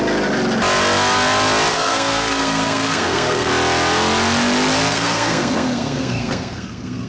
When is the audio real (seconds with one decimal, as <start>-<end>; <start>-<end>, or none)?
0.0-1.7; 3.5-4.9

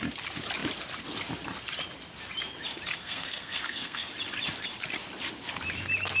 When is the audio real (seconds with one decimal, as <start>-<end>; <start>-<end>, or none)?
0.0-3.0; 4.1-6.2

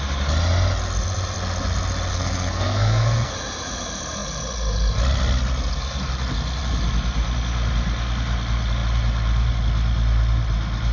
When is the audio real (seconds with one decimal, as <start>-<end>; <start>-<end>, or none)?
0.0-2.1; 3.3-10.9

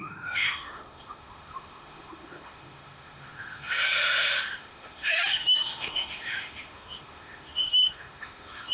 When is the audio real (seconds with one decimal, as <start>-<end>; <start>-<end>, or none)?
none